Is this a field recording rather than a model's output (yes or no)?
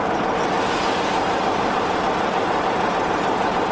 yes